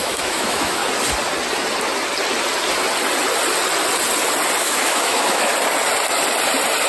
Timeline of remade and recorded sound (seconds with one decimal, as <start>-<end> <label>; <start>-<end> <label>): 0.0-0.8 remade; 0.8-4.6 recorded; 4.6-5.5 remade; 5.5-6.9 recorded